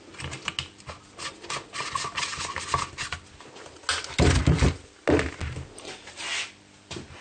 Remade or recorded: recorded